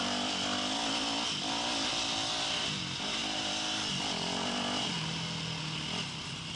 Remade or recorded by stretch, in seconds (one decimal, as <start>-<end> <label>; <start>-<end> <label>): 0.0-6.6 recorded